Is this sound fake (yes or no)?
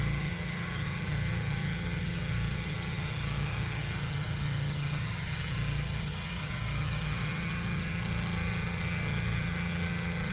yes